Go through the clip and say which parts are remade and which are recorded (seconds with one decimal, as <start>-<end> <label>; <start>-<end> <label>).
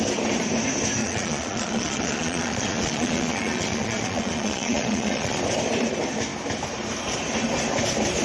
0.0-1.0 recorded; 1.0-5.4 remade; 5.4-8.2 recorded